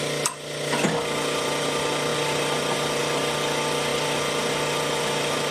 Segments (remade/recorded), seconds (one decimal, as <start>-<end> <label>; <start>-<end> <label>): 0.0-5.5 recorded